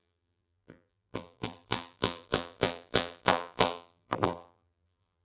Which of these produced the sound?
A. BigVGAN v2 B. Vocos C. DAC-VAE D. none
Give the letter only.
A